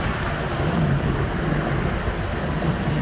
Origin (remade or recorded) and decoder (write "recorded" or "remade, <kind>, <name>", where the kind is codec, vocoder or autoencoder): recorded